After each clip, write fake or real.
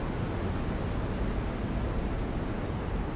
real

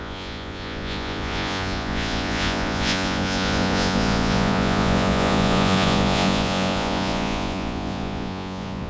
fake